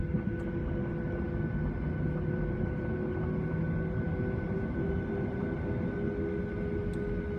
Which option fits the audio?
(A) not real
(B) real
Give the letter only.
B